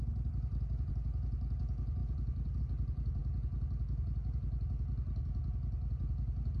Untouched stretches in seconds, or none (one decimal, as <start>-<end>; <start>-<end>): 0.0-2.0; 2.6-6.6